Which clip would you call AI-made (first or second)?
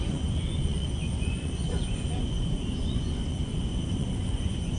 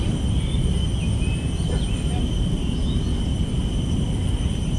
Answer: first